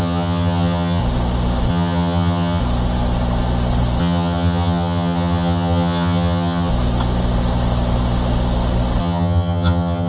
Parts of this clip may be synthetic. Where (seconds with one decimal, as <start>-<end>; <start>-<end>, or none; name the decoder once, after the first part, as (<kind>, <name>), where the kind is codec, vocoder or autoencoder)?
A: 0.0-1.0 (vocoder, HiFi-GAN); 1.7-2.6; 4.0-6.7; 9.0-10.1